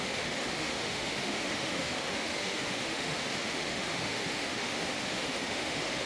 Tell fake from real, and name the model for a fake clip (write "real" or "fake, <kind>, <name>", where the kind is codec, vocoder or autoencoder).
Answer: fake, autoencoder, DAC-VAE